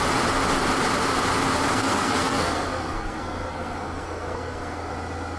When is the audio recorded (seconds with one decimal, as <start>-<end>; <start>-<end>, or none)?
0.0-1.7; 4.9-5.4